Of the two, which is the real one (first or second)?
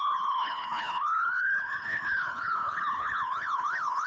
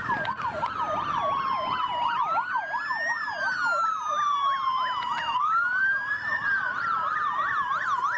second